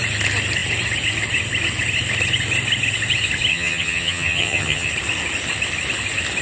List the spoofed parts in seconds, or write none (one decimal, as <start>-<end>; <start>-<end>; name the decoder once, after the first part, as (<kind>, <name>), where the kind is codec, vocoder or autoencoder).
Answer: 3.5-4.9 (vocoder, HiFi-GAN)